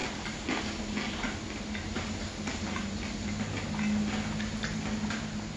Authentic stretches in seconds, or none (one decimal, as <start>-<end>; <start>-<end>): 0.0-5.6